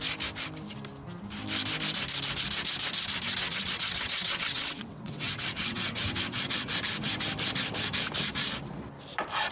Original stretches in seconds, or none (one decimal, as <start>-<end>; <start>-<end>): 0.0-3.5; 6.7-9.5